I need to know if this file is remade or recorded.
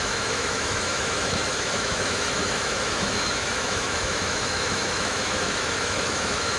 remade